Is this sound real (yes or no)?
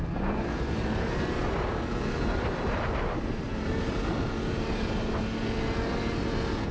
yes